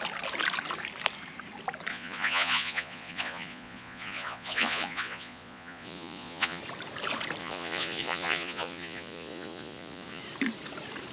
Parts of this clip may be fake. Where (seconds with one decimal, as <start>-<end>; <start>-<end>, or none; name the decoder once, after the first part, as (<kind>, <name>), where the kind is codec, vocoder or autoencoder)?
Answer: 1.9-6.6 (vocoder, Vocos); 7.4-10.2